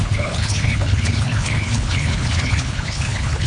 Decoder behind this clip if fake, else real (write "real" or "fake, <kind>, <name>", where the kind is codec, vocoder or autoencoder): fake, codec, HILCodec